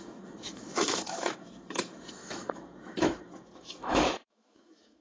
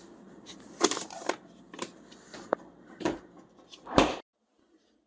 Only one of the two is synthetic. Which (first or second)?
first